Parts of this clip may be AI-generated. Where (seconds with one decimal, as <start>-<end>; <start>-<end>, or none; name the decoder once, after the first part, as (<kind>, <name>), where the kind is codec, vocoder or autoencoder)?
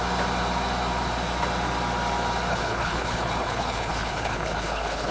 2.5-5.1 (codec, HILCodec)